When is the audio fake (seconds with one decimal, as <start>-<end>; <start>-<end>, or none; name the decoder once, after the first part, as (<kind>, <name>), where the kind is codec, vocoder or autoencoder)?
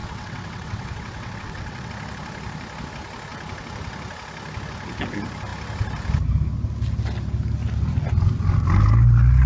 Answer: 0.0-1.9 (vocoder, WaveNeXt)